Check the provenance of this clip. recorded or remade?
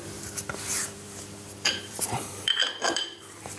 remade